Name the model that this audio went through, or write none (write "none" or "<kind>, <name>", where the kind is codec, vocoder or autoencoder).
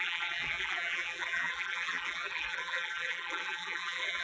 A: vocoder, BigVGAN v2